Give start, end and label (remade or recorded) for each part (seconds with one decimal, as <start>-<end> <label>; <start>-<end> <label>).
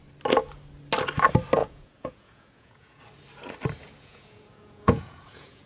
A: 0.0-1.6 recorded; 1.6-3.0 remade; 3.0-3.8 recorded; 3.8-5.7 remade